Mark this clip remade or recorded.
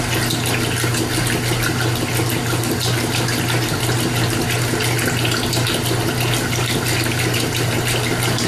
recorded